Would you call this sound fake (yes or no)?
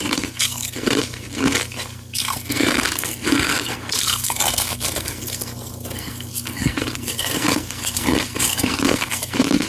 yes